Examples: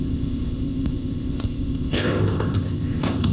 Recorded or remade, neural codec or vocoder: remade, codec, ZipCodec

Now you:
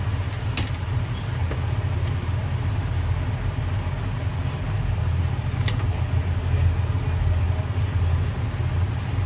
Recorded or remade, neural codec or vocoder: recorded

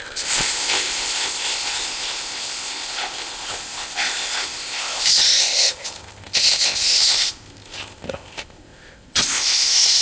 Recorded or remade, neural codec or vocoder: remade, codec, ZipCodec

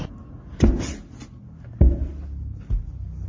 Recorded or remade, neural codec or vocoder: recorded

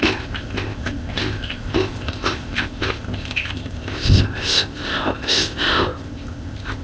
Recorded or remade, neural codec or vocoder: remade, codec, ZipCodec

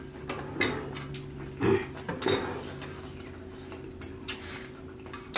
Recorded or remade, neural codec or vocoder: recorded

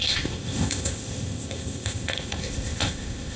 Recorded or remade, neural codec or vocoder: remade, codec, ZipCodec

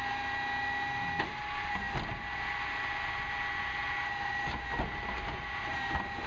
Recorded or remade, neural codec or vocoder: recorded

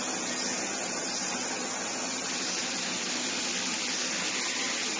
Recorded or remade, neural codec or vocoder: recorded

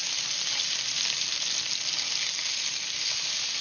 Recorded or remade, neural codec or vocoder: recorded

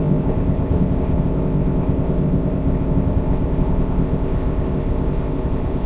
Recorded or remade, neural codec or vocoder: remade, codec, ZipCodec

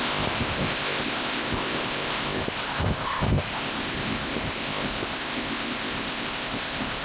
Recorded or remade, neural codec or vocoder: remade, codec, ZipCodec